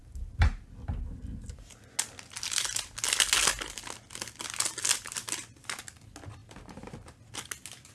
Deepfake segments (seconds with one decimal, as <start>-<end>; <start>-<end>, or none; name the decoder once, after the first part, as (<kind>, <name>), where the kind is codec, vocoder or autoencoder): none